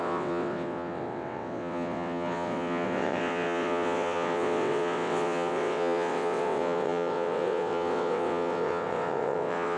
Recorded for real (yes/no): no